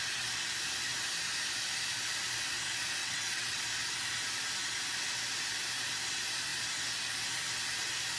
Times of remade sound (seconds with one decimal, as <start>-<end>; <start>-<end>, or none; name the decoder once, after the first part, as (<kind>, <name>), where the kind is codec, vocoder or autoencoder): 3.0-3.6 (vocoder, WaveNeXt)